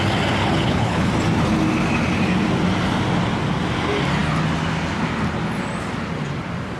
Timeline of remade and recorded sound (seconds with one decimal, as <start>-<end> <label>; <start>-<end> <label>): 0.0-0.4 recorded; 0.4-1.1 remade; 1.1-6.8 recorded